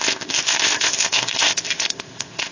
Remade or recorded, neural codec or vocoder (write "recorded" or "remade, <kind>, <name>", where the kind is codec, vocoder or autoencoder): remade, codec, ZipCodec